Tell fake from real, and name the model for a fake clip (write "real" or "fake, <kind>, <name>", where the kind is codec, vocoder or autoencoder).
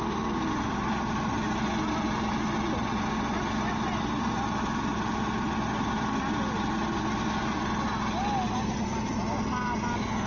real